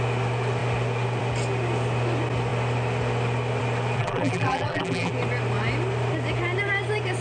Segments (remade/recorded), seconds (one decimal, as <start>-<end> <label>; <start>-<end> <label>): 0.0-4.0 recorded; 4.0-5.1 remade; 5.1-7.2 recorded